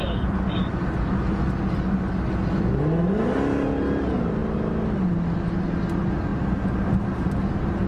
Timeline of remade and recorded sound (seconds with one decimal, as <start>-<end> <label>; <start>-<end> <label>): 0.0-7.9 recorded